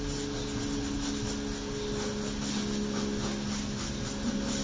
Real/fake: real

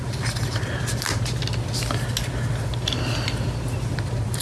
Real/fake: real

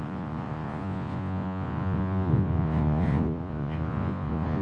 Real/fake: fake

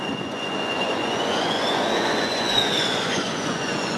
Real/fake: fake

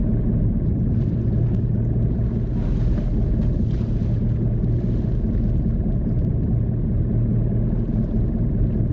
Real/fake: real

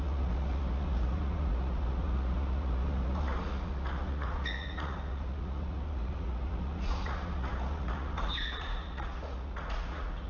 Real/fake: fake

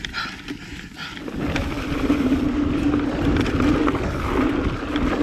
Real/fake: real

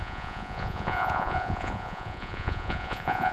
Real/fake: fake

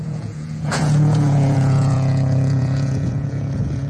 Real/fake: fake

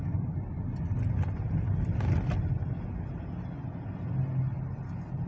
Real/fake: real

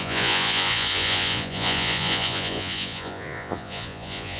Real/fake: fake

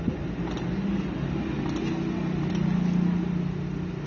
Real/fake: real